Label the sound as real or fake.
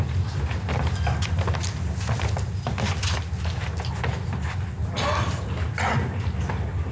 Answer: real